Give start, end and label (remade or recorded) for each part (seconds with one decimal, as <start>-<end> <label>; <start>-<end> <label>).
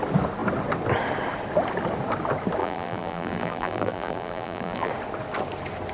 0.0-2.6 recorded; 2.6-4.9 remade; 4.9-5.9 recorded